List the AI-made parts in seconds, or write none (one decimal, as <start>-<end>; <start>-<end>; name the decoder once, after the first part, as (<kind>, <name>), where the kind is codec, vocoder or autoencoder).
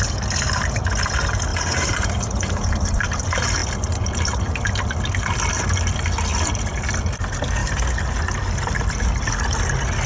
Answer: 1.5-3.0 (vocoder, BigVGAN v2); 7.6-8.1